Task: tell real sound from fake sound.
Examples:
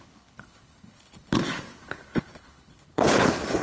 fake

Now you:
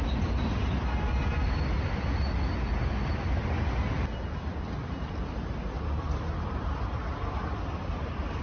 real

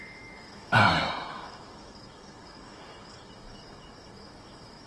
fake